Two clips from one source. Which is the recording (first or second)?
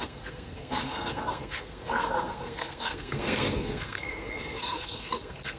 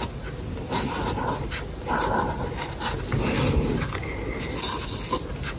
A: second